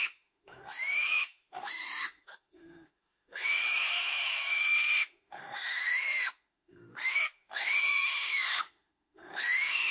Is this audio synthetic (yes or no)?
yes